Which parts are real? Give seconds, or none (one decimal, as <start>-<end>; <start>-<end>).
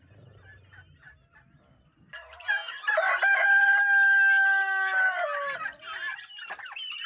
0.0-7.1